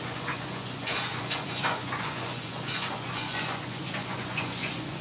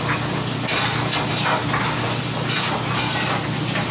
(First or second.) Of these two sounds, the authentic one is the second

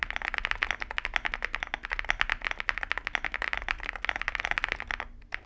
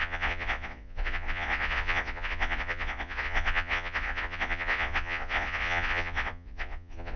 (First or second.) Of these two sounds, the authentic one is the first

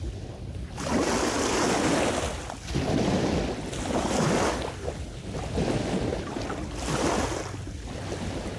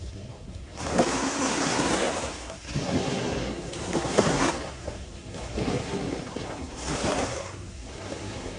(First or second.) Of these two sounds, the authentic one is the first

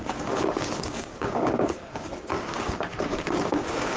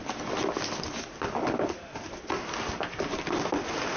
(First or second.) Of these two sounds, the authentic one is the second